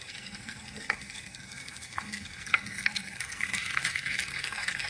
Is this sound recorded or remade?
remade